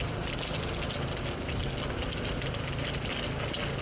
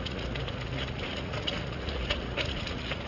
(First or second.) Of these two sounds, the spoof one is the second